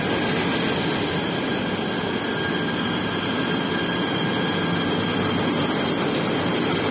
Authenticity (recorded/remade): recorded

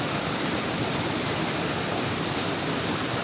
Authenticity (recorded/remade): recorded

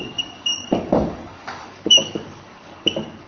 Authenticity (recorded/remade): remade